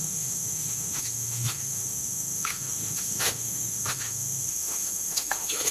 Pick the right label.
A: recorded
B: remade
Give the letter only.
B